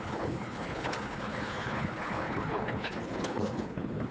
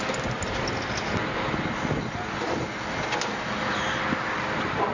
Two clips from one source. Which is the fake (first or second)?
first